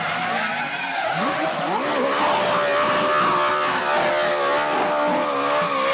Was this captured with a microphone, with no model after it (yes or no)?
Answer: yes